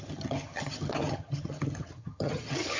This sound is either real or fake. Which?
fake